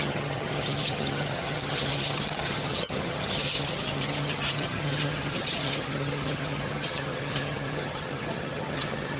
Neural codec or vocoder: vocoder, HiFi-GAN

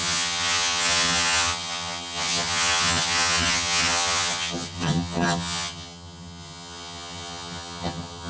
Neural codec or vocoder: vocoder, HiFi-GAN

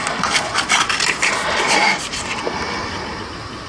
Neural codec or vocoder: none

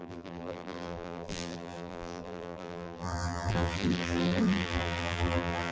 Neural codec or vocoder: vocoder, BigVGAN v2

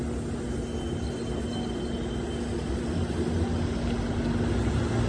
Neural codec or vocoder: none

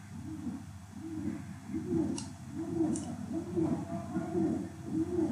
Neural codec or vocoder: none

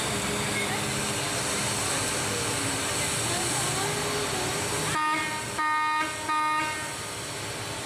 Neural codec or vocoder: none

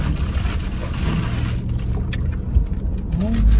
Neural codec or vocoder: none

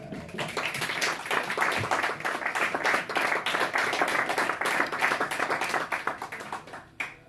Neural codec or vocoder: none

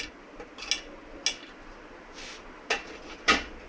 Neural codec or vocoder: none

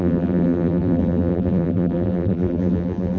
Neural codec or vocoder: vocoder, BigVGAN v2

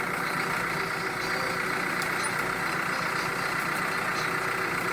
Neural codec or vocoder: none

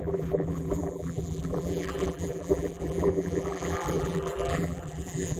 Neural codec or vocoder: vocoder, BigVGAN v2